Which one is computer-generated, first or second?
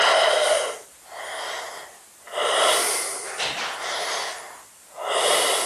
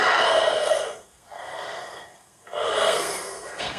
second